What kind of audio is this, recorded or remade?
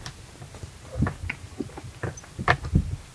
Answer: recorded